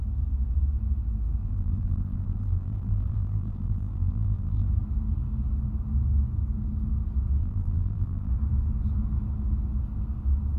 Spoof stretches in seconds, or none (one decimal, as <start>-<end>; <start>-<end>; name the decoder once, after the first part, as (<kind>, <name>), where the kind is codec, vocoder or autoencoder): 1.4-4.7 (vocoder, BigVGAN v2); 7.4-8.3